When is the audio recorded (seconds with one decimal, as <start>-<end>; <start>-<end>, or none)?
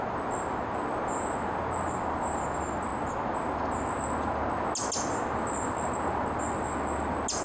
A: 0.0-7.4